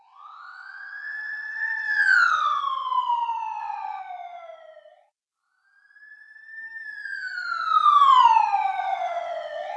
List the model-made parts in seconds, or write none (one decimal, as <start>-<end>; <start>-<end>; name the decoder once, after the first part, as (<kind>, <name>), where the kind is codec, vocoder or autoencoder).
0.0-2.6 (vocoder, WaveNeXt); 3.6-4.0; 8.8-9.8